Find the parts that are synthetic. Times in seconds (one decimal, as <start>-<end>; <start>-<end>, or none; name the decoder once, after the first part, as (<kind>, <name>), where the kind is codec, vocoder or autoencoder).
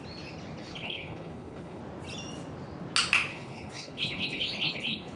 0.6-1.8 (codec, HILCodec); 3.3-5.2